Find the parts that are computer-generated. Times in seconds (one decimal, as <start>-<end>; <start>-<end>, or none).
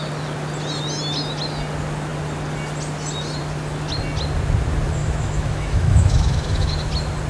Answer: 5.0-6.7